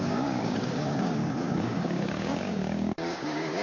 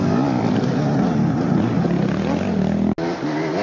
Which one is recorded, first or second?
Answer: second